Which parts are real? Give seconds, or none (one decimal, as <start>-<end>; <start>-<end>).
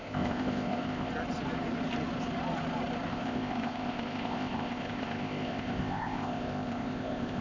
1.1-3.1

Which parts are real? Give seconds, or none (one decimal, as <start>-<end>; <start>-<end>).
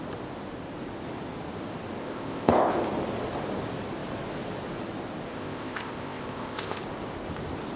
0.0-2.0; 2.7-5.3; 6.8-7.8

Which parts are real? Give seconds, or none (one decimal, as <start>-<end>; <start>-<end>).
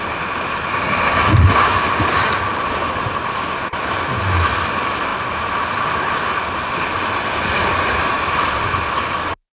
0.0-9.5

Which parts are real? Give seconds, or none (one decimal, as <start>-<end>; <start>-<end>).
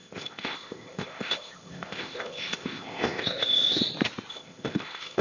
3.8-4.3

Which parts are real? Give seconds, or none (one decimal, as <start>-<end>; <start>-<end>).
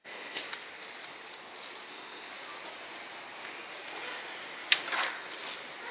0.4-1.9; 2.3-5.9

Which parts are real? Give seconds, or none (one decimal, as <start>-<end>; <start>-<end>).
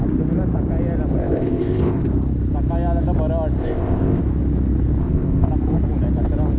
0.0-1.2; 2.0-3.6; 4.2-5.0; 5.5-6.6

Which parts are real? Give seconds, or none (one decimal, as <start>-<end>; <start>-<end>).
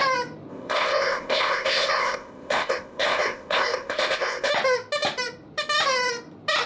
0.0-0.5; 4.5-6.7